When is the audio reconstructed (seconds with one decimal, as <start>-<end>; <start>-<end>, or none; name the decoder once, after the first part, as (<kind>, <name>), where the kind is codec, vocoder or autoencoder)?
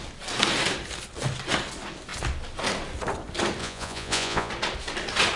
3.6-4.5 (vocoder, Vocos)